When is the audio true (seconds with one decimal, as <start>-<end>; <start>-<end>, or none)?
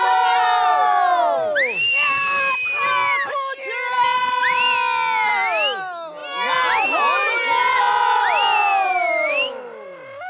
0.0-10.3